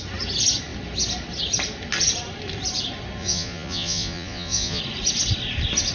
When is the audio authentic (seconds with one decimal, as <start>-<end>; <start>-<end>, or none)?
0.0-3.2; 4.8-5.9